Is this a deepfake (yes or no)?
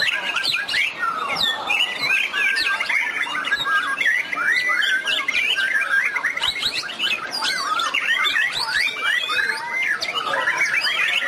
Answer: no